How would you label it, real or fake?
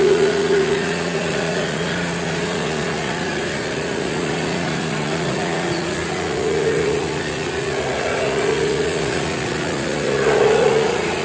fake